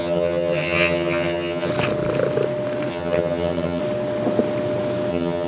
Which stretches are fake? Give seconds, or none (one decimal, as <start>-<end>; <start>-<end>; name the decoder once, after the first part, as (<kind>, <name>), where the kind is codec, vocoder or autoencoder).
0.0-1.7 (vocoder, HiFi-GAN); 2.9-3.8; 5.1-5.5